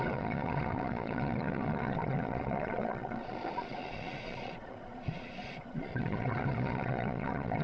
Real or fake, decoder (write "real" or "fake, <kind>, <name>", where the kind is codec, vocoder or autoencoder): fake, vocoder, Vocos